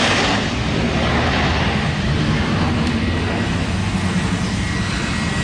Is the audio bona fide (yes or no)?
yes